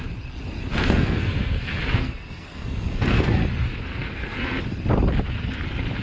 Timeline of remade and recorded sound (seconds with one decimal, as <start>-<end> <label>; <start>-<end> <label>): 0.0-0.7 recorded; 0.7-3.3 remade; 3.3-3.9 recorded; 3.9-4.6 remade; 4.6-6.0 recorded